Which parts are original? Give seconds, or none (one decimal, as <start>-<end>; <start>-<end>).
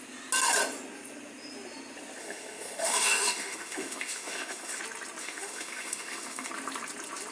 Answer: 0.0-2.2; 4.8-5.2; 6.5-7.3